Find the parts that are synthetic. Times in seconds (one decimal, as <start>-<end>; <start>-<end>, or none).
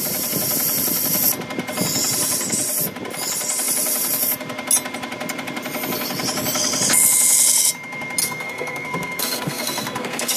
8.2-10.4